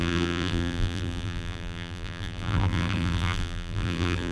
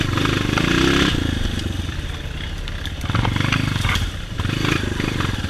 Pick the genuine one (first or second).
second